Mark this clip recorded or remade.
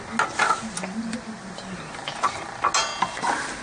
recorded